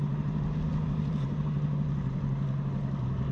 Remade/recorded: recorded